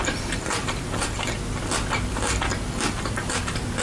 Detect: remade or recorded recorded